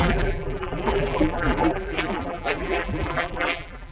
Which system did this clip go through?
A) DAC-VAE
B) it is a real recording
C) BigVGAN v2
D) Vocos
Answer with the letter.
C